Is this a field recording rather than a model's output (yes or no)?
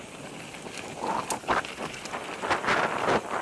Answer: yes